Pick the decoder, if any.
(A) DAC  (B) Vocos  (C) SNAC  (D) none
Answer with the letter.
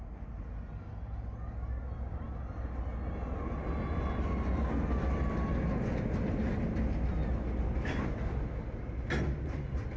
D